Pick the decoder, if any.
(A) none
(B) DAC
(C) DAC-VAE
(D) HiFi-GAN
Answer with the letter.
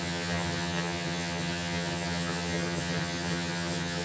D